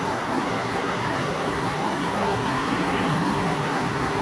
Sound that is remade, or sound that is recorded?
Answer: remade